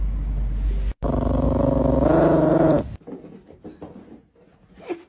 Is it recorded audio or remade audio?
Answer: recorded